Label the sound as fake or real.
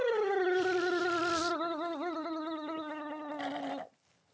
real